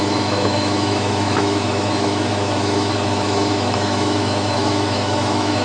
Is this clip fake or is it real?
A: fake